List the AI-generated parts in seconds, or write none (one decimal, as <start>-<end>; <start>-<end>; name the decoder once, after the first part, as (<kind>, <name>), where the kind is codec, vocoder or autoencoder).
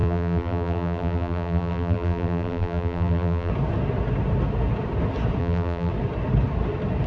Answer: 0.0-3.5 (vocoder, BigVGAN v2); 5.4-5.9